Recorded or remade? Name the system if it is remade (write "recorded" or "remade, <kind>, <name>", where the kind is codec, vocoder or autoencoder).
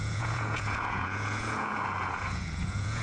remade, vocoder, Vocos